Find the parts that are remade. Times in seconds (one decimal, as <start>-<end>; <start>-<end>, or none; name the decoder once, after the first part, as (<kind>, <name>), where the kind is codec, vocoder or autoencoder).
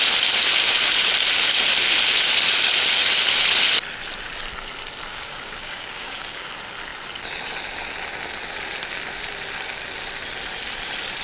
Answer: 5.1-6.5 (codec, DAC)